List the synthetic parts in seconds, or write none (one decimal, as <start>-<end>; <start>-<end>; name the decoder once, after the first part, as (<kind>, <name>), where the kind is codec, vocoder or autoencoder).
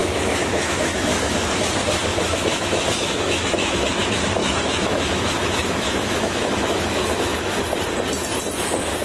0.0-1.5 (autoencoder, DAC-VAE); 2.1-3.9; 4.4-7.7